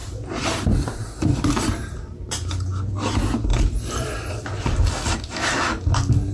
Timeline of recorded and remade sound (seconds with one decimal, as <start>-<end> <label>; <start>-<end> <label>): 0.0-2.2 remade; 2.2-3.5 recorded; 3.5-4.8 remade; 4.8-6.3 recorded